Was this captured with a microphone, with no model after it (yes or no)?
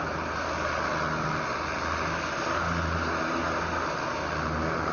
yes